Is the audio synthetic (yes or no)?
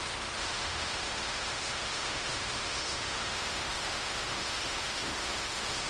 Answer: yes